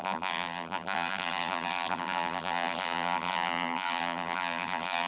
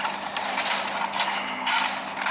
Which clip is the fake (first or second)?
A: first